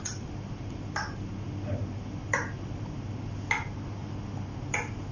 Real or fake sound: real